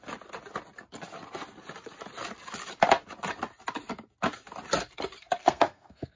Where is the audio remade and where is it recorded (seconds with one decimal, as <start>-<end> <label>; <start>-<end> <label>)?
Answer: 0.0-5.4 recorded; 5.4-6.2 remade